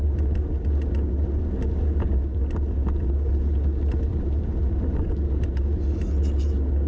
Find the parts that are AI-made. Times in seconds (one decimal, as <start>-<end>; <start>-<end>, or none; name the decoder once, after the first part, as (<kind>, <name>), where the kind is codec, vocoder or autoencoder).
none